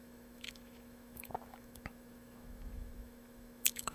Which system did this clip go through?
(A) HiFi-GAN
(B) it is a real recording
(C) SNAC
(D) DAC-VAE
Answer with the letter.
D